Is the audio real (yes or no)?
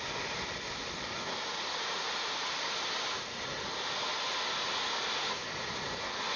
yes